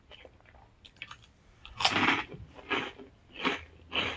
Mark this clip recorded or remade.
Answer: recorded